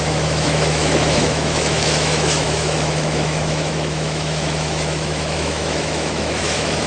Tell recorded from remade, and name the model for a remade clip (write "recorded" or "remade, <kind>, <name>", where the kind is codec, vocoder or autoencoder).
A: remade, autoencoder, DAC-VAE